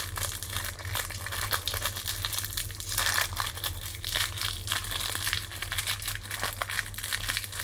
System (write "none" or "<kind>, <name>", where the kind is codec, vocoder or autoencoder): none